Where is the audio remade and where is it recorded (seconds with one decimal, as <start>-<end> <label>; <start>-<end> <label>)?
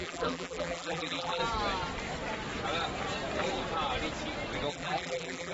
0.0-1.4 remade; 1.4-4.7 recorded; 4.7-5.5 remade